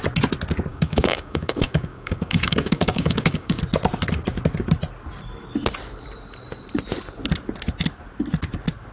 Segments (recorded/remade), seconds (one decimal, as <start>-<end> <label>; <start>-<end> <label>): 0.0-0.7 recorded; 0.7-3.6 remade; 3.6-8.9 recorded